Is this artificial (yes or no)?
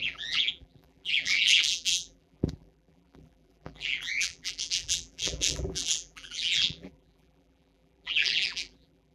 yes